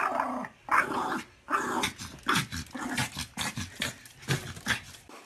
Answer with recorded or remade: recorded